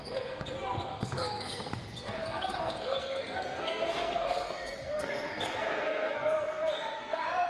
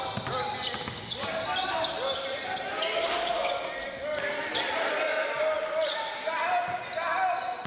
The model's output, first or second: first